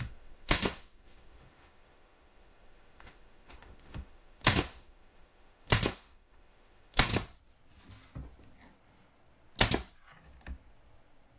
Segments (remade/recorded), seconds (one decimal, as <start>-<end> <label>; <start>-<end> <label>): 0.0-7.1 remade; 7.1-11.4 recorded